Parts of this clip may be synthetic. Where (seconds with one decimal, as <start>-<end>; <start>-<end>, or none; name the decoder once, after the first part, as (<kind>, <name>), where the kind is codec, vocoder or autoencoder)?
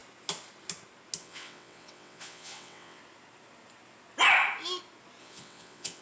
1.2-3.0 (vocoder, WaveNeXt); 5.2-6.0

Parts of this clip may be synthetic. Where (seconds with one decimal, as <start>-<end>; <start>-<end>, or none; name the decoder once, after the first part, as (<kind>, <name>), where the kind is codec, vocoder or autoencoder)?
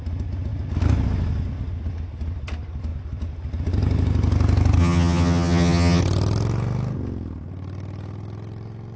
4.8-6.0 (vocoder, HiFi-GAN)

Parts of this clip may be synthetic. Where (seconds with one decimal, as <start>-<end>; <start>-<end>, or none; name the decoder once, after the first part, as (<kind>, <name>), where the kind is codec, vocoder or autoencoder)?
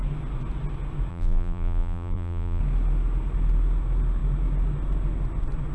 1.1-2.6 (vocoder, BigVGAN v2)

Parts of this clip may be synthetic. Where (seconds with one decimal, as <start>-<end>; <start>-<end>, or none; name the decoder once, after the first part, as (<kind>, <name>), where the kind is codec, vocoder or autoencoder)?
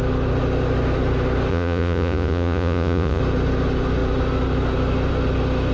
1.5-3.2 (vocoder, Vocos)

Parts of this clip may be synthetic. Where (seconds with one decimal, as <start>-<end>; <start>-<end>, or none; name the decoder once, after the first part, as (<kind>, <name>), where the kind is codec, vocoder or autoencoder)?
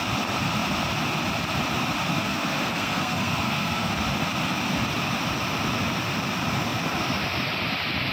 2.1-3.9 (codec, SNAC)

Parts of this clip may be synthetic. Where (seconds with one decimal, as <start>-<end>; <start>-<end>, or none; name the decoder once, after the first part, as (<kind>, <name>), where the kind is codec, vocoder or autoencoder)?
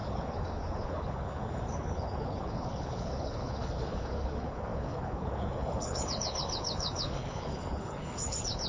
0.0-8.7 (codec, HILCodec)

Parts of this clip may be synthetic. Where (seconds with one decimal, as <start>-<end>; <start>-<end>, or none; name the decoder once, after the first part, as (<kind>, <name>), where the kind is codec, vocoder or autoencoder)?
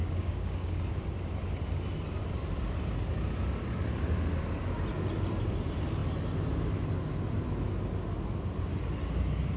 0.0-0.9 (codec, DAC)